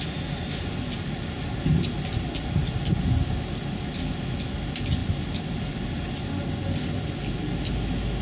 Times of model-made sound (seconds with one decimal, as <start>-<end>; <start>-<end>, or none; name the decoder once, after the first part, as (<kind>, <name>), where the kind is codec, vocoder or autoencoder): none

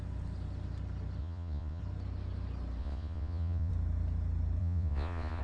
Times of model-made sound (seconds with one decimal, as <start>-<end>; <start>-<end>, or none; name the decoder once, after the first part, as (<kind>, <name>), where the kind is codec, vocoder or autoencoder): 1.2-1.8 (vocoder, Vocos); 2.8-3.7; 4.6-5.4

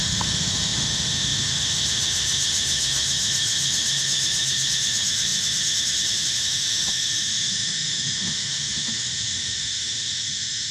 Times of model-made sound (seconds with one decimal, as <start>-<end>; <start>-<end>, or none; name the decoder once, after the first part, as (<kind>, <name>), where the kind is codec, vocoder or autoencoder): 0.0-10.7 (autoencoder, DAC-VAE)

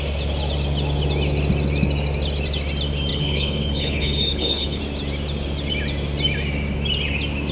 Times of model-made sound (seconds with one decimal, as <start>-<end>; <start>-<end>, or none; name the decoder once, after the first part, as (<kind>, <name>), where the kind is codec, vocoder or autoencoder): 3.1-4.8 (codec, HILCodec)

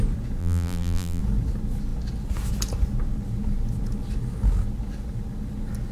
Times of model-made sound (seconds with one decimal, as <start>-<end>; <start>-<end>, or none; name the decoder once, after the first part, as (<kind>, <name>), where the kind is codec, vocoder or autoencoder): 0.4-1.2 (vocoder, BigVGAN v2)

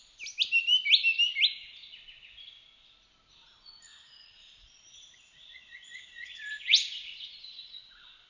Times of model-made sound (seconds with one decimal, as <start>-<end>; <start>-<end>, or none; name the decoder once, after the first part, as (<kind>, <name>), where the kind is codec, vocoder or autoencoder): 3.9-8.3 (vocoder, Vocos)

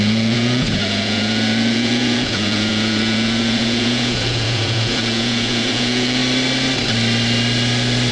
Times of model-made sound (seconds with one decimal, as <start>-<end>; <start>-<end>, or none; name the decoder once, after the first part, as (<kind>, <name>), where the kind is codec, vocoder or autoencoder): 0.0-6.2 (vocoder, Vocos)

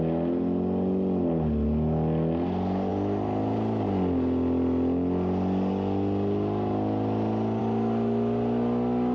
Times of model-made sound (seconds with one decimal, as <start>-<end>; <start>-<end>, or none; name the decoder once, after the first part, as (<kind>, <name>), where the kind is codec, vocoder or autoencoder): none